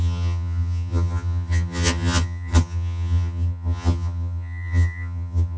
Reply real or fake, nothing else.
fake